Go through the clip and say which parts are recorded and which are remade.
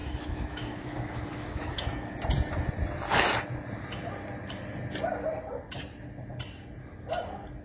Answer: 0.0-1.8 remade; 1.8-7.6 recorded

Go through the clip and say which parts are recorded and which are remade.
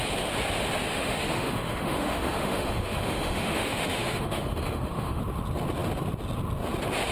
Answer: 0.0-0.9 recorded; 0.9-5.2 remade; 5.2-7.1 recorded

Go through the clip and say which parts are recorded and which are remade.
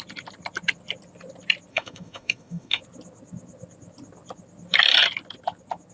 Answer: 0.0-1.7 recorded; 1.7-2.8 remade; 2.8-5.9 recorded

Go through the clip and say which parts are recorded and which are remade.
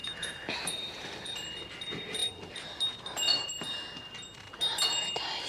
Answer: 0.0-0.6 remade; 0.6-5.5 recorded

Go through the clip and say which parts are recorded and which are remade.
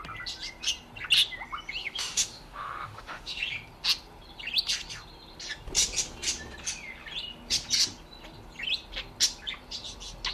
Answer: 0.0-1.8 recorded; 1.8-3.4 remade; 3.4-10.3 recorded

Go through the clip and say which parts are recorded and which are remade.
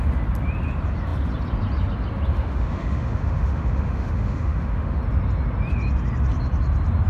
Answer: 0.0-2.3 recorded; 2.3-5.0 remade; 5.0-7.1 recorded